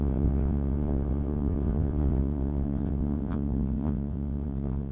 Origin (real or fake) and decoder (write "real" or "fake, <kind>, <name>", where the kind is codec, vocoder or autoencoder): fake, vocoder, WaveNeXt